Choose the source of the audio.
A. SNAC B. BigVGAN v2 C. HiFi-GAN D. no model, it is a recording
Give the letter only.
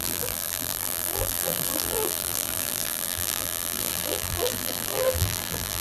B